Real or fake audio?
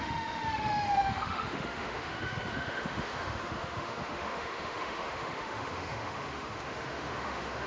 fake